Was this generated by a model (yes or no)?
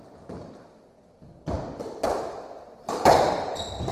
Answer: no